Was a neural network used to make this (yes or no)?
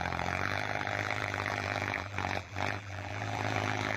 yes